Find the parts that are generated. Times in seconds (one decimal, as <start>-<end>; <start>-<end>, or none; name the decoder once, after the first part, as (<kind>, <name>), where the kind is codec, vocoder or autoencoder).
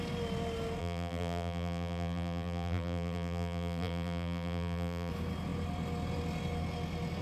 0.8-5.1 (vocoder, BigVGAN v2)